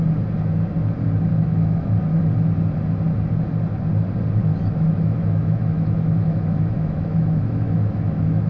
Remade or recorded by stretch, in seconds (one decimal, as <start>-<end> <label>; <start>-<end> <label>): 0.0-1.3 recorded; 1.3-2.2 remade; 2.2-4.5 recorded; 4.5-8.5 remade